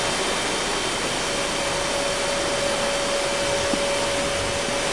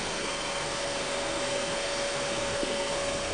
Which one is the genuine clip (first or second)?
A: first